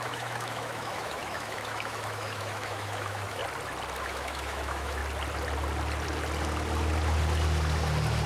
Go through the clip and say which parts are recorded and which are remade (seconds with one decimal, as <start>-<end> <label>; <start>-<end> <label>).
0.0-3.4 remade; 3.4-4.0 recorded; 4.0-5.0 remade; 5.0-8.3 recorded